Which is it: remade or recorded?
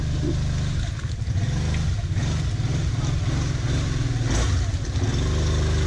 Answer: recorded